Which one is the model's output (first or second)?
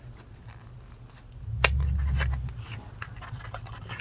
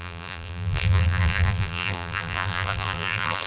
second